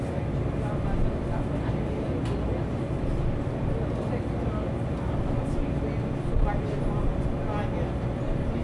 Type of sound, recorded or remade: recorded